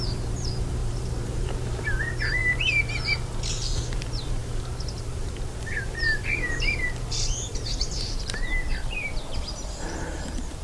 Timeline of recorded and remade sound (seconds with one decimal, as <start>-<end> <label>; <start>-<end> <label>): 0.0-2.4 remade; 2.4-3.8 recorded; 3.8-10.6 remade